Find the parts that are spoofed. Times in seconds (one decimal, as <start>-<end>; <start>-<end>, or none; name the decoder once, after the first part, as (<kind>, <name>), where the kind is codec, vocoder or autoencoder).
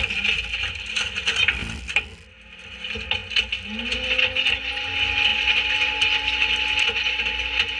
none